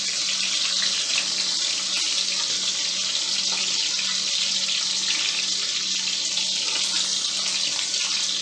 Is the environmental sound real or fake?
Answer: real